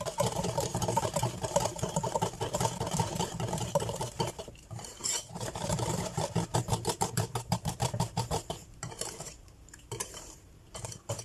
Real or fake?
fake